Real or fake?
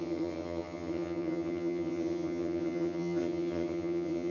fake